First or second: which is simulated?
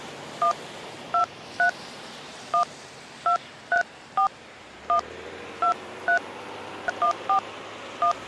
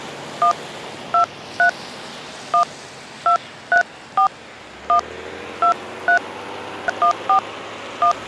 first